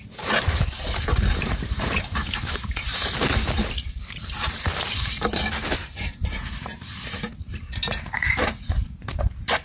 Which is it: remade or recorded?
remade